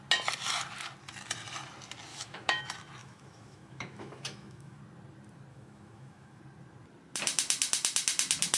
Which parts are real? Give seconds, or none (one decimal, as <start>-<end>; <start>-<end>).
0.0-2.1; 2.6-3.0; 4.8-5.5; 6.4-8.6

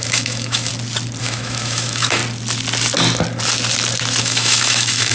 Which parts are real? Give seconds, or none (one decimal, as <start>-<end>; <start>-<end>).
0.7-1.2; 2.2-4.2

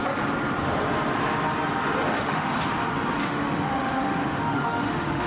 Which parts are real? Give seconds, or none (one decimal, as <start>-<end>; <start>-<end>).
0.0-2.1; 2.7-3.2